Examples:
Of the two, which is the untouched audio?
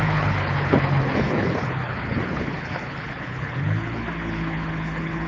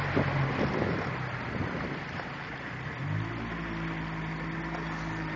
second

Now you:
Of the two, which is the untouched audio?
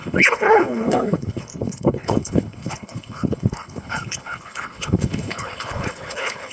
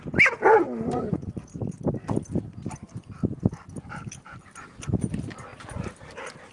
second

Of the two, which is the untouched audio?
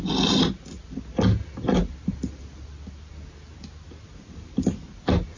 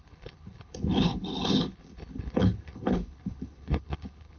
first